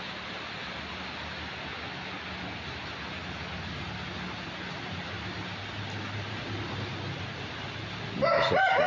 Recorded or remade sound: recorded